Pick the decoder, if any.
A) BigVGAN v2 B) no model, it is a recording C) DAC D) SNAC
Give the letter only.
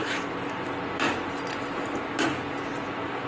B